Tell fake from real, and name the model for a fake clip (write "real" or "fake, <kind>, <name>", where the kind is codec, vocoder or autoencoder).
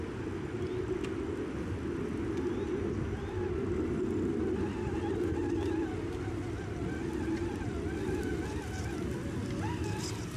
real